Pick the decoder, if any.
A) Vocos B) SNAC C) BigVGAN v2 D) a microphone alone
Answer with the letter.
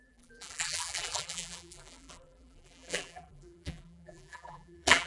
C